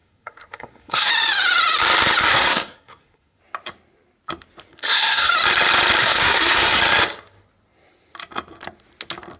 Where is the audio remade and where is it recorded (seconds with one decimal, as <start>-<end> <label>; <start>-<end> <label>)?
0.0-1.1 remade; 1.1-2.3 recorded; 2.3-3.4 remade; 3.4-4.7 recorded; 4.7-5.3 remade; 5.3-6.0 recorded; 6.0-6.8 remade; 6.8-9.4 recorded